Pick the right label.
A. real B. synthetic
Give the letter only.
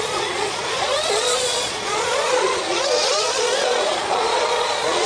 B